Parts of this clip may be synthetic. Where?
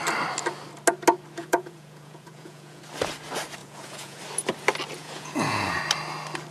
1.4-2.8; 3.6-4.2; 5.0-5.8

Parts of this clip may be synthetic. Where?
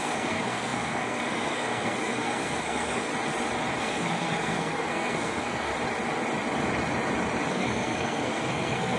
0.0-3.1; 3.8-5.7; 7.5-9.0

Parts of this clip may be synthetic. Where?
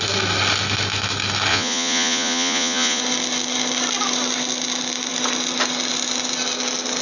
1.5-3.0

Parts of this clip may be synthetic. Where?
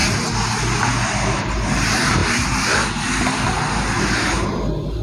1.7-2.2; 4.0-5.0